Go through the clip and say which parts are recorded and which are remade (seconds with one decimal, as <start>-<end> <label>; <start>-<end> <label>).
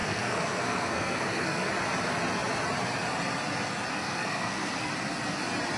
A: 0.0-1.7 remade; 1.7-3.9 recorded; 3.9-4.9 remade; 4.9-5.8 recorded